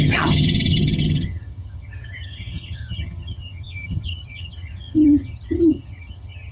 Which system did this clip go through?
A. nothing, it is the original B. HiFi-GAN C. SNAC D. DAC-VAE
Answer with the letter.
B